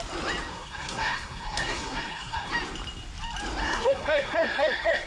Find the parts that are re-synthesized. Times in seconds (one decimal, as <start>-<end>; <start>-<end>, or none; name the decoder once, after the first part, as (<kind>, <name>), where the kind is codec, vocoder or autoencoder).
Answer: 0.5-2.5 (codec, SNAC); 3.6-5.1